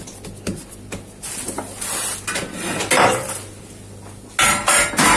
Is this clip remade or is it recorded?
recorded